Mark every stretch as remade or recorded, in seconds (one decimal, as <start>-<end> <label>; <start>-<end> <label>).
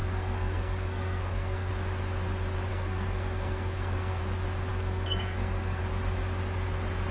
0.0-1.7 remade; 1.7-2.7 recorded; 2.7-4.2 remade; 4.2-4.7 recorded; 4.7-5.8 remade; 5.8-7.1 recorded